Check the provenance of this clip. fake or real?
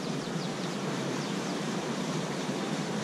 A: fake